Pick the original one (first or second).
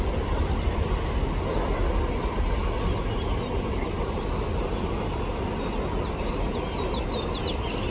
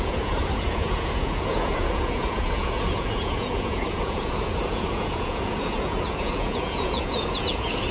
first